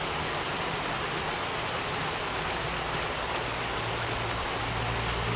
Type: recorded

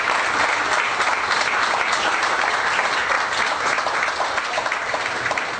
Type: recorded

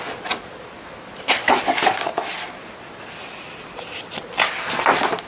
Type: recorded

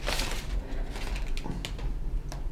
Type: recorded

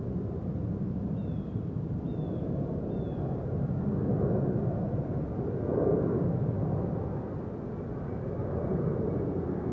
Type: recorded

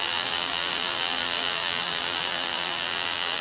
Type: remade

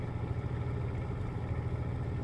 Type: recorded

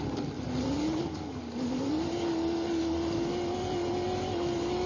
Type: recorded